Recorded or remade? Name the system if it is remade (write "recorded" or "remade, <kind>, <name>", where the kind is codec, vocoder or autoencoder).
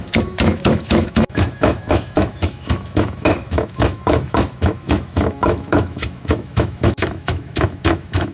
remade, autoencoder, DAC-VAE